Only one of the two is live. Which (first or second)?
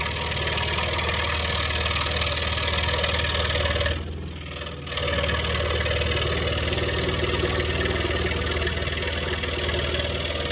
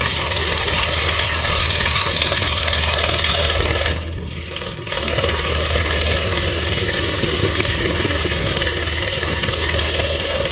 first